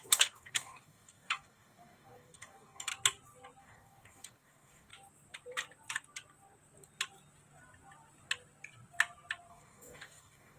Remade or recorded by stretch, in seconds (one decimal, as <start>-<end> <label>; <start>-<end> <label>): 0.0-2.9 remade; 2.9-3.6 recorded; 3.6-4.9 remade; 4.9-9.5 recorded; 9.5-10.6 remade